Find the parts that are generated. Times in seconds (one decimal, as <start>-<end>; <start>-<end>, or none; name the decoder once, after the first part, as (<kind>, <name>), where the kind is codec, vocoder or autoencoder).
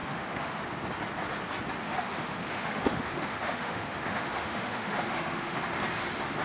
0.0-0.6 (autoencoder, DAC-VAE); 1.8-5.6